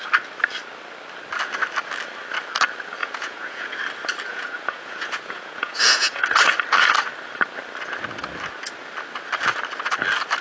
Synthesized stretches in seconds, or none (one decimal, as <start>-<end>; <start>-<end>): 3.0-3.8; 4.3-6.2